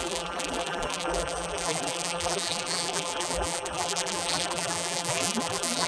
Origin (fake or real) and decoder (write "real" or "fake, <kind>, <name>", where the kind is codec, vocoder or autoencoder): fake, vocoder, BigVGAN v2